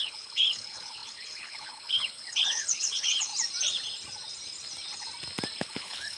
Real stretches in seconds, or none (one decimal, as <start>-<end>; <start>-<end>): 3.3-5.6